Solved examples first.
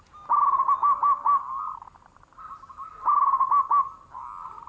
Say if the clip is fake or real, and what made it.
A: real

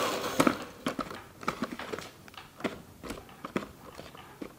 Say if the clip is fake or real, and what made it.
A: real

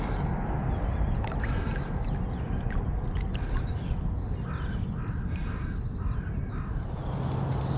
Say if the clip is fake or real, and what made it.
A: real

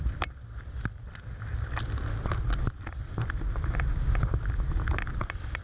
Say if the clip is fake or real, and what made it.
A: real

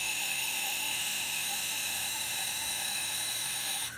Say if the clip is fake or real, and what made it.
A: fake, autoencoder, DAC-VAE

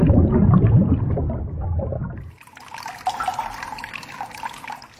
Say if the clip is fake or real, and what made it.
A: real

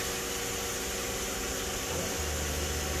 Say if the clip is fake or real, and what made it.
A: real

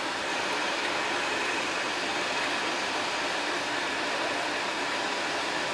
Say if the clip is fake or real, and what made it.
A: real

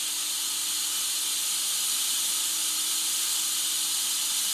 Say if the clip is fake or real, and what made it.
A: real